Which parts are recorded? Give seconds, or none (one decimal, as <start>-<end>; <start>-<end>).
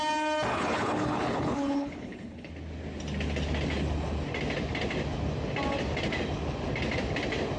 0.0-0.5; 2.5-7.6